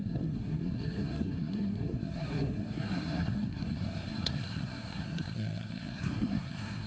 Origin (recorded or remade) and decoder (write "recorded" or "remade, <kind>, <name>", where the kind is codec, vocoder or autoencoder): remade, codec, SNAC